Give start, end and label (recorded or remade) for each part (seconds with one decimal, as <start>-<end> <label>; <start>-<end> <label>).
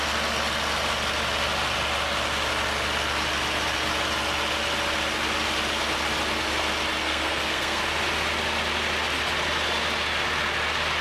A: 0.0-7.0 recorded; 7.0-7.8 remade; 7.8-11.0 recorded